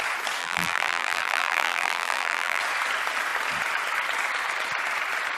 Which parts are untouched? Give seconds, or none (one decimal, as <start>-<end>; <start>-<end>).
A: 0.0-0.4; 2.6-5.4